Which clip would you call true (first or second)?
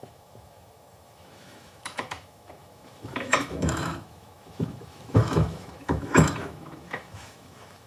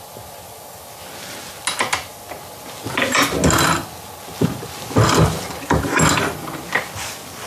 second